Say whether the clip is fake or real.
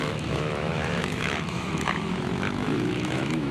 fake